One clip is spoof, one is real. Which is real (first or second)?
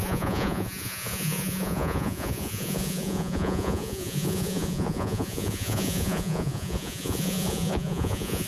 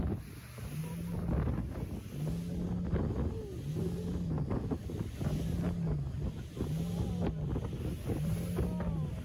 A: second